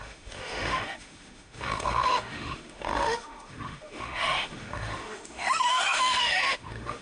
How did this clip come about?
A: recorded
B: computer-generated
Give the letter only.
B